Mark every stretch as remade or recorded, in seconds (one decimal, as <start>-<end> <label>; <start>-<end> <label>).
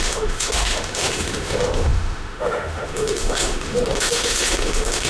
0.0-5.1 remade